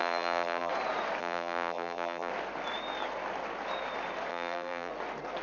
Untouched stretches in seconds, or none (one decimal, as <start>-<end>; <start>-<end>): 0.7-1.2; 2.3-4.3; 4.9-5.4